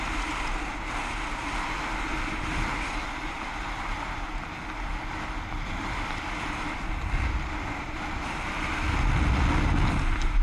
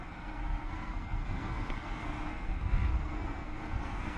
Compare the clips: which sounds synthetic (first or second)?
second